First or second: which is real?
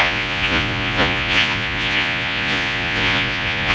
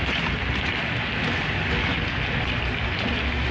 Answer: second